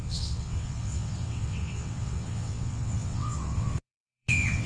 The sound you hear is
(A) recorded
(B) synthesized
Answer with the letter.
B